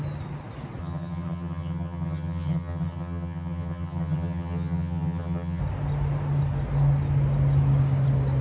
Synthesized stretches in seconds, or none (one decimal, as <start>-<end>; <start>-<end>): 0.8-5.6